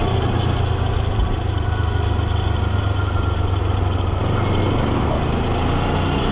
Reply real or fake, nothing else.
real